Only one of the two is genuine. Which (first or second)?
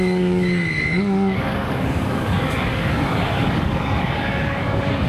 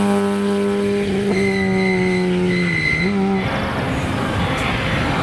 second